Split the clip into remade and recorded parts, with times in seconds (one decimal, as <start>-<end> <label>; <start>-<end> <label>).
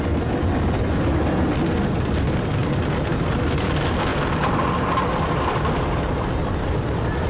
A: 0.0-2.6 recorded; 2.6-3.4 remade; 3.4-7.3 recorded